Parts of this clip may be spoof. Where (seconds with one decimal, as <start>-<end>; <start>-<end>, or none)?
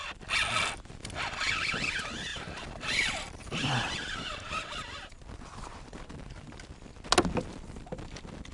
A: 2.3-6.6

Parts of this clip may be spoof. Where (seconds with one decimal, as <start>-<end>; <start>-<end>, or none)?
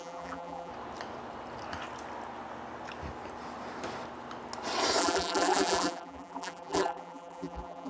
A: 0.0-0.7; 5.0-7.9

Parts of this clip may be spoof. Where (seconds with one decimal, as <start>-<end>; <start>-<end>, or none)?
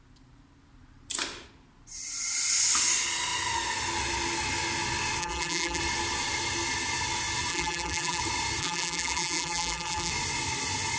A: 5.2-5.8; 7.5-8.2; 8.6-10.1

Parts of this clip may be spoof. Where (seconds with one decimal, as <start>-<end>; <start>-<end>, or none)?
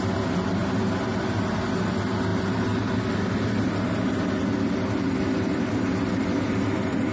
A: none